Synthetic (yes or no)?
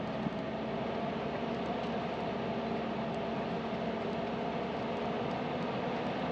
no